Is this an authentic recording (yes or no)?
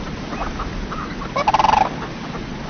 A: yes